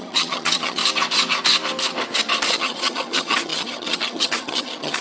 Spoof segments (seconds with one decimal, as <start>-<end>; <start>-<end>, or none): 0.0-0.8; 2.5-5.0